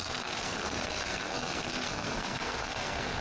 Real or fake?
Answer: fake